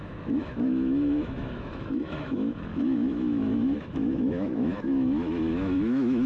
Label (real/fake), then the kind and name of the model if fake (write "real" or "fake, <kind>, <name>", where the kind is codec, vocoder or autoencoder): fake, autoencoder, DAC-VAE